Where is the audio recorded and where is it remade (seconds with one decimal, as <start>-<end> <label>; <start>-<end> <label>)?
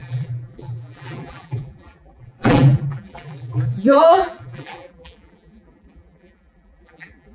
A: 0.0-7.3 remade